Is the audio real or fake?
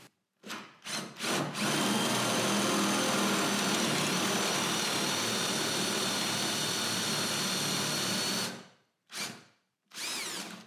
real